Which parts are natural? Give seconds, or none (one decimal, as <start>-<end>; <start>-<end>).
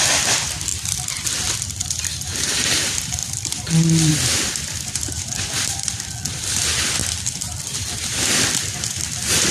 0.0-0.7; 1.5-3.2; 4.1-7.0; 8.2-9.5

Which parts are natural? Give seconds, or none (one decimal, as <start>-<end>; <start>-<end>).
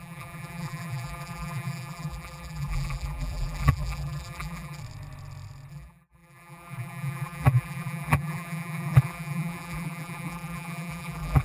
4.8-5.7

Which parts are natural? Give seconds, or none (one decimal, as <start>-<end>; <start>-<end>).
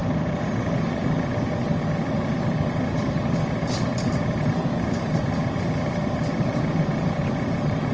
none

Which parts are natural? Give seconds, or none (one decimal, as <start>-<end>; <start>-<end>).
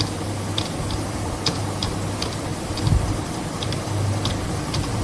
none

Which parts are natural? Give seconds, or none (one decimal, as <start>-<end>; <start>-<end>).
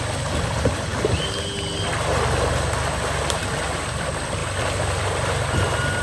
0.0-6.0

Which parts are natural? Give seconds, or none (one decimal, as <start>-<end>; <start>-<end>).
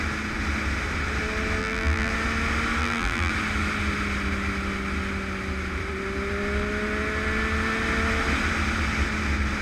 0.0-1.6; 2.1-2.8; 3.3-9.6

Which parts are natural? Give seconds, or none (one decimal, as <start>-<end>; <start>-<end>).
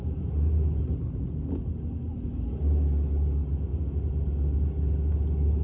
0.0-5.6